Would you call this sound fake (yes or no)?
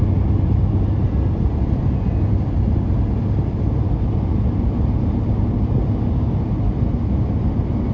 no